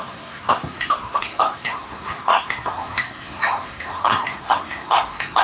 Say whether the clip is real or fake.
fake